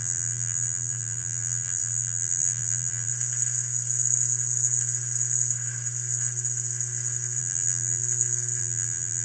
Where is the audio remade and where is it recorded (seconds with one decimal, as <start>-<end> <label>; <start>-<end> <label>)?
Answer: 0.0-3.1 remade; 3.1-7.4 recorded; 7.4-8.0 remade; 8.0-8.6 recorded; 8.6-9.2 remade